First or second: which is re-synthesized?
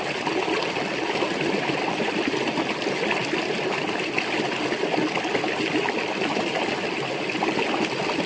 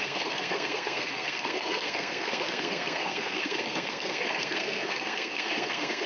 second